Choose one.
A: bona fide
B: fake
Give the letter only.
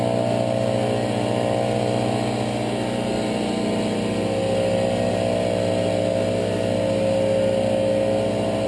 A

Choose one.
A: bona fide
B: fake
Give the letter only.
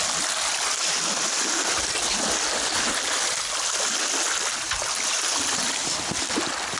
A